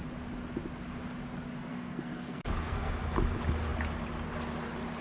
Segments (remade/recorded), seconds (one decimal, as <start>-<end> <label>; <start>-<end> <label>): 0.0-1.7 recorded; 1.7-2.9 remade; 2.9-5.0 recorded